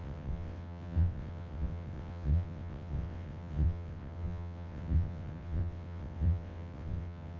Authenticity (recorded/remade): remade